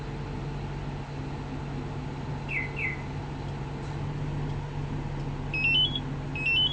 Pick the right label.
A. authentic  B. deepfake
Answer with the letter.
A